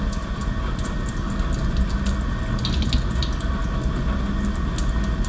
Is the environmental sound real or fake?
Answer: real